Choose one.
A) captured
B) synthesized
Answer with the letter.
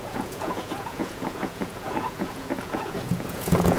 B